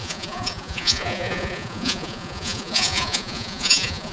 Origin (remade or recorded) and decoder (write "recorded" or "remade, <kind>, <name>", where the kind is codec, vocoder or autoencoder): remade, vocoder, Vocos